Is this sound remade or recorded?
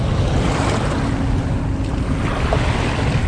recorded